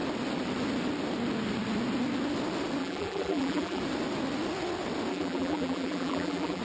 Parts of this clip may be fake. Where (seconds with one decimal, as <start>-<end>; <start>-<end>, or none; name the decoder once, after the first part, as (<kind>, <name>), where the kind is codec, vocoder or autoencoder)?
2.8-3.8 (vocoder, BigVGAN v2); 5.1-6.6